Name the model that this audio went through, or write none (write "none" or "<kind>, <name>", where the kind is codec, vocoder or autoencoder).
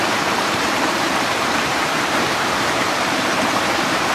vocoder, BigVGAN v2